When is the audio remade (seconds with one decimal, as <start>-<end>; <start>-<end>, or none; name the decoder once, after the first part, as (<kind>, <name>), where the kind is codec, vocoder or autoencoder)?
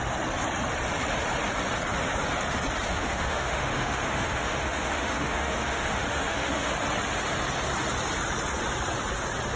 2.9-6.7 (autoencoder, DAC-VAE)